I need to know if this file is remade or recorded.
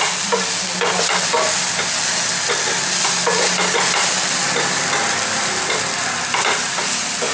recorded